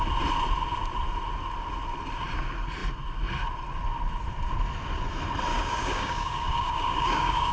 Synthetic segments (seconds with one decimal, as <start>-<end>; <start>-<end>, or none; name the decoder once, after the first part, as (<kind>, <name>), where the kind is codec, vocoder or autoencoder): 5.5-7.5 (codec, DAC)